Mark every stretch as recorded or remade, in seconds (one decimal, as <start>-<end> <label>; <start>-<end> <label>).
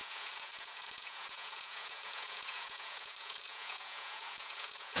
0.0-5.0 remade